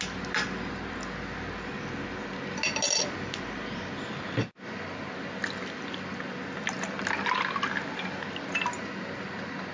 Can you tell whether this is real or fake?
real